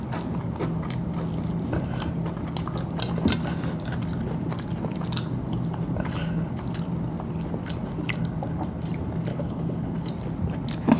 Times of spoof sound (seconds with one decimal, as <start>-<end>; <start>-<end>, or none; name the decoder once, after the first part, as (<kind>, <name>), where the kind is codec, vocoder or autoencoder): 9.3-10.1 (codec, HILCodec)